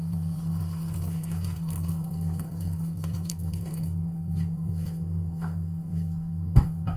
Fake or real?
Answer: fake